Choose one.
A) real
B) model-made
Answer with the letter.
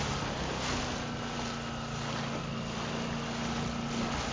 A